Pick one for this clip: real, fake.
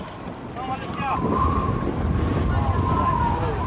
real